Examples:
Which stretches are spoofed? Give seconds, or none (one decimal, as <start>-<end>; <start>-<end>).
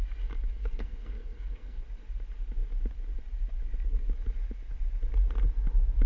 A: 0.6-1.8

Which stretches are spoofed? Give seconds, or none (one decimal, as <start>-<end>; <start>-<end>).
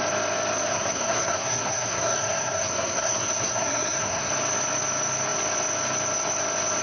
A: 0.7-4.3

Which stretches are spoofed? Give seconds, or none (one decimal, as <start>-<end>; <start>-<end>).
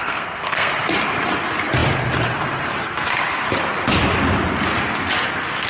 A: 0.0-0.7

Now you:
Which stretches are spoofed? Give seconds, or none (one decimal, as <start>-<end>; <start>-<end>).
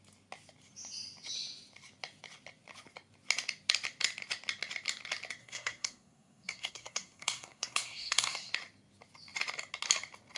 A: 5.4-8.5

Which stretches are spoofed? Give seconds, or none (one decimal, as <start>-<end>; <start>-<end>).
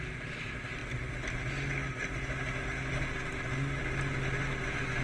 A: none